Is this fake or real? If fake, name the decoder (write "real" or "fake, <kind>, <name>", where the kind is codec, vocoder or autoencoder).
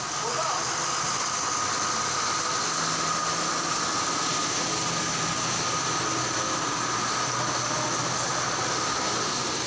real